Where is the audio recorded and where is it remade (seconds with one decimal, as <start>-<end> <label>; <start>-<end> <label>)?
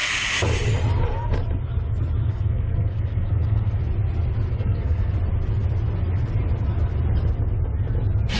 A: 0.0-2.2 recorded; 2.2-3.8 remade; 3.8-4.5 recorded; 4.5-5.1 remade; 5.1-8.4 recorded